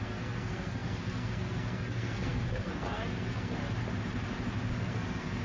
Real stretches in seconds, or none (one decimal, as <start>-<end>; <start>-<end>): 3.6-4.8